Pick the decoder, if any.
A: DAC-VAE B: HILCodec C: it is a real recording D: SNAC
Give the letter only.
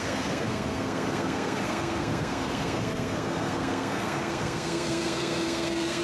D